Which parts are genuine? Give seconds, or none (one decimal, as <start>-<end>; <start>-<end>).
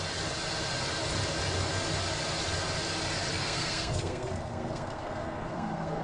0.0-3.3